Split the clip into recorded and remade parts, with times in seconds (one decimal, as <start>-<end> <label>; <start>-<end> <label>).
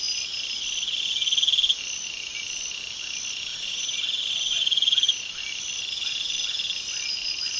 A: 0.0-3.5 recorded; 3.5-5.3 remade; 5.3-7.6 recorded